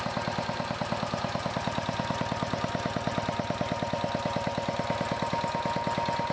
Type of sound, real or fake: real